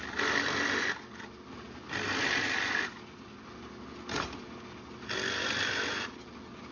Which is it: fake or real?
real